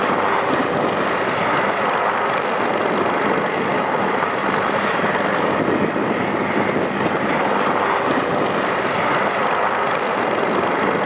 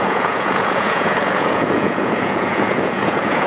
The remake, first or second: second